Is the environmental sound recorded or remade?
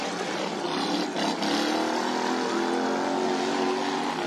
recorded